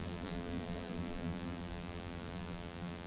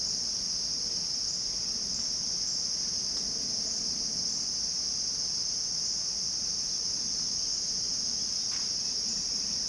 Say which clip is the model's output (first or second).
first